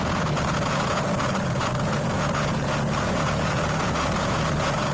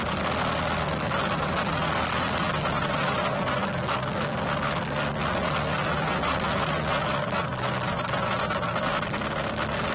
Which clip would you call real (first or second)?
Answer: second